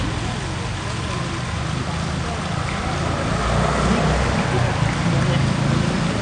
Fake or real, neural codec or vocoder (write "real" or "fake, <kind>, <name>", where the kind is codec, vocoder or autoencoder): real